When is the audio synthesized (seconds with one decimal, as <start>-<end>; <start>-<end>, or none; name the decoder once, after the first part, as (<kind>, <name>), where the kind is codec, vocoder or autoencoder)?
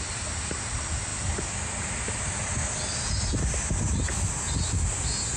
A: none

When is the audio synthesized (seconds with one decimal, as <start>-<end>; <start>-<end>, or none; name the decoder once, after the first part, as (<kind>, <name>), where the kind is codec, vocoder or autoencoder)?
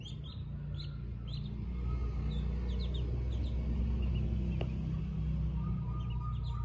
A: none